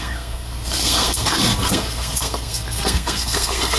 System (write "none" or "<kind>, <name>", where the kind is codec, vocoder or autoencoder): codec, SNAC